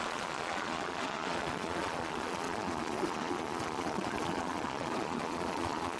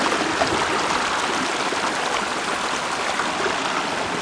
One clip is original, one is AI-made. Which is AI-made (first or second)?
first